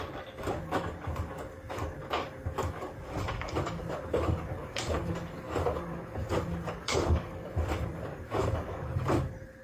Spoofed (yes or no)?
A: yes